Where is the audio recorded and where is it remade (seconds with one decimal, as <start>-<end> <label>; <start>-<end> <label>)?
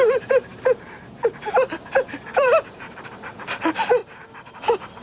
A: 0.0-4.0 remade; 4.0-4.6 recorded; 4.6-5.0 remade